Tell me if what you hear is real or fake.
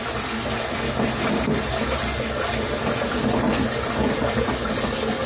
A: real